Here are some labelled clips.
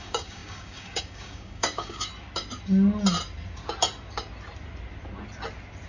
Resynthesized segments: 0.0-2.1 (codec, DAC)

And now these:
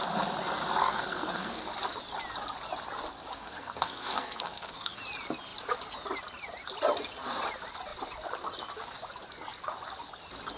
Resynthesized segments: 0.8-1.7 (codec, SNAC); 3.3-5.0

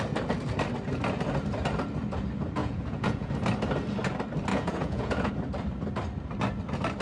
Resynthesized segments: 2.6-3.3 (vocoder, Vocos); 4.5-5.3

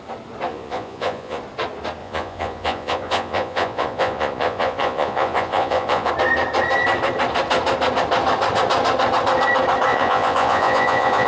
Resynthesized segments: 0.5-1.4 (vocoder, Vocos); 2.0-6.1; 9.9-11.3

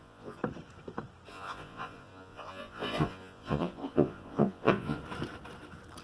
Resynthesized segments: 0.0-0.4 (vocoder, Vocos); 1.3-5.0

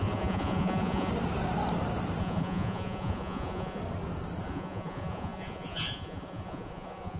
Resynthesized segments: 0.0-1.1 (vocoder, Vocos); 2.2-3.8; 4.4-7.2

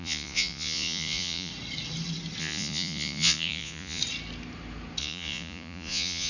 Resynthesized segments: 0.0-1.5 (vocoder, Vocos); 2.4-4.0; 5.0-6.3

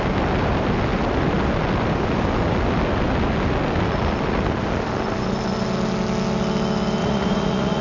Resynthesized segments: 7.0-7.8 (vocoder, Vocos)